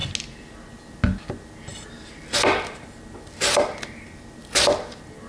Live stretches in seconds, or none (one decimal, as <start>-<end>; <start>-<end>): 0.0-5.3